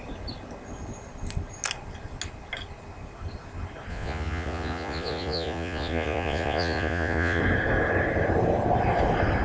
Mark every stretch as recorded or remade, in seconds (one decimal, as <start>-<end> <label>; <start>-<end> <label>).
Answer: 0.0-3.9 recorded; 3.9-7.4 remade; 7.4-9.4 recorded